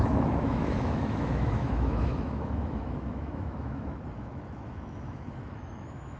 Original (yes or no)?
no